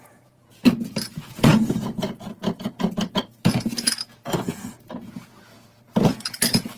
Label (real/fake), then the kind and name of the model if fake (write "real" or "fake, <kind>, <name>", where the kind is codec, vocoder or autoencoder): fake, vocoder, Vocos